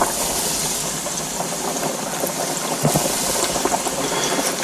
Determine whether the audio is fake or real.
real